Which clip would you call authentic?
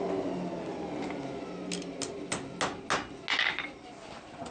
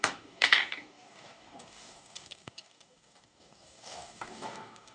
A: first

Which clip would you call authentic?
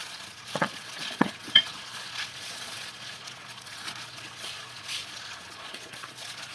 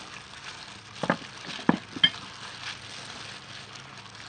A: second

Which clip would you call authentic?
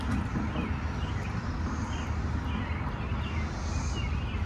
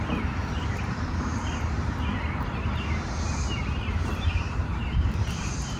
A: first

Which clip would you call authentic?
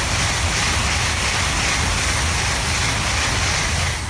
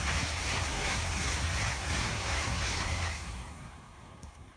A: first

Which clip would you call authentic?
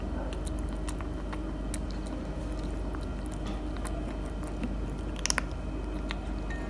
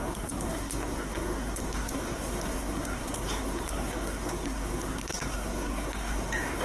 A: first